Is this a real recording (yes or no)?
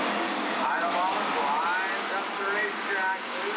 yes